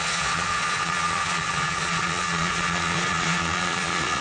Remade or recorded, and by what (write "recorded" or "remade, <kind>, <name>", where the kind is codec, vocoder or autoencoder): remade, vocoder, Vocos